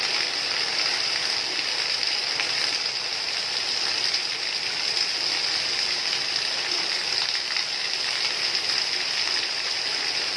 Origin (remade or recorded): recorded